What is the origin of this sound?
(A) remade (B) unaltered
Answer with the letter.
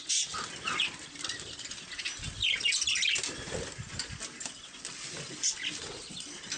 B